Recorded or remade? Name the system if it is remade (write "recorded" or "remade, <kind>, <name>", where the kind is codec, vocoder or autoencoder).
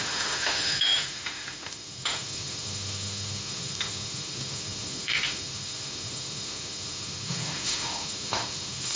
remade, autoencoder, DAC-VAE